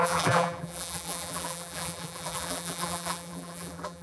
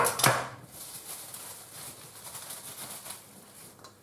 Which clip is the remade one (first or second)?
first